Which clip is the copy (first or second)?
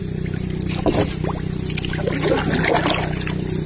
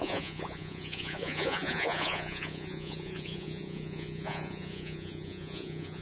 second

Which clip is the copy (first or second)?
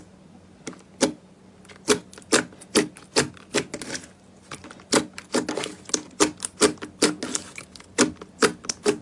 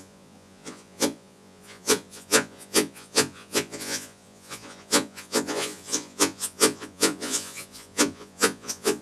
second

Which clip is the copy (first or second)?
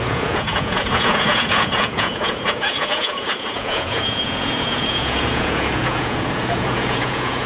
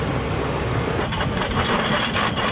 first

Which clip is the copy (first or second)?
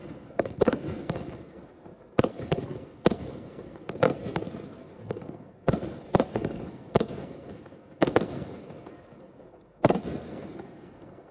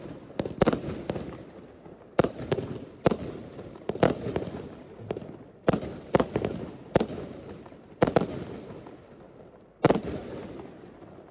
first